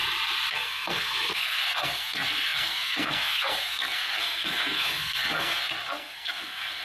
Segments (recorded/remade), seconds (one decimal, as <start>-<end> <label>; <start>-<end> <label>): 0.0-0.5 recorded; 0.5-6.8 remade